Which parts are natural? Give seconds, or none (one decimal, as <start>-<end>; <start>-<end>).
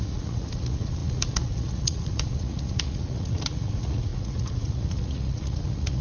none